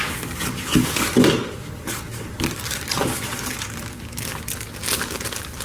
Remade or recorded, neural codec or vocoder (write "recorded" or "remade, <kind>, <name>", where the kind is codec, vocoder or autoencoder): remade, codec, DAC